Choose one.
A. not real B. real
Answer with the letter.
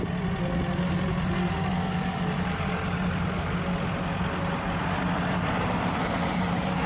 B